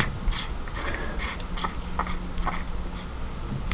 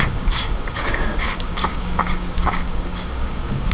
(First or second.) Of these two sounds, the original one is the first